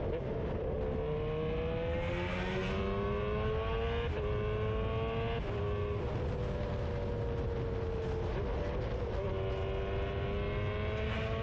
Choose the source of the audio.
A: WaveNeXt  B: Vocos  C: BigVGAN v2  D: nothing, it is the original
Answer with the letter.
D